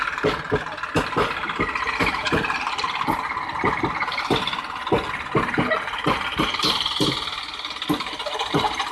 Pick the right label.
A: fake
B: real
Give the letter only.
B